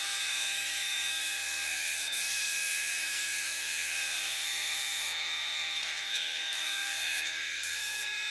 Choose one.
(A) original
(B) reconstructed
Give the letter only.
B